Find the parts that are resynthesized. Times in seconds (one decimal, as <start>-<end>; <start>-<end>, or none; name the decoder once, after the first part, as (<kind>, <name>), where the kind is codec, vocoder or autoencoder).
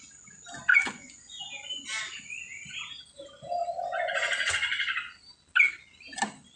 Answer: 0.7-1.4 (vocoder, Vocos)